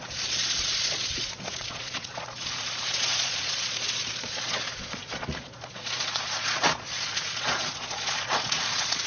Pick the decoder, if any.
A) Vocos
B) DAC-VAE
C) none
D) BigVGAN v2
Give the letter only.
A